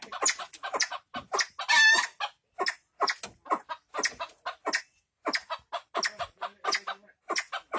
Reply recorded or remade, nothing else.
recorded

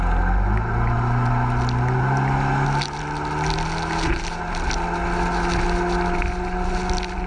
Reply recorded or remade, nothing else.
recorded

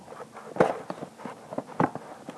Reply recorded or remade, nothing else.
recorded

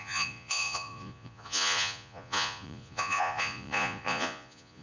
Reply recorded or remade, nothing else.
remade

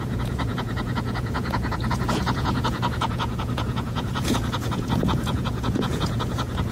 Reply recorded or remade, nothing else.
remade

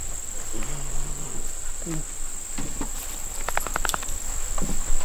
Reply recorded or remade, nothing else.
recorded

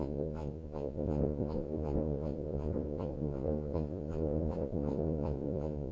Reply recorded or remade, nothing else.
remade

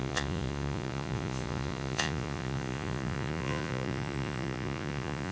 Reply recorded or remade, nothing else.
remade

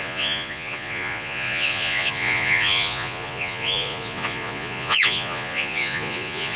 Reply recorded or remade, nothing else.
remade